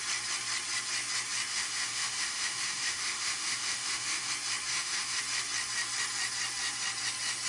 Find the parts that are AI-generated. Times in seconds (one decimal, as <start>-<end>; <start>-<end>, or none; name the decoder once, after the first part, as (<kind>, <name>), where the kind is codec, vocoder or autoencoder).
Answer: 1.5-4.3 (autoencoder, DAC-VAE); 4.7-5.2